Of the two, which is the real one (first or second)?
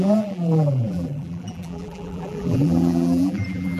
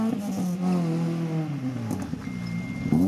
second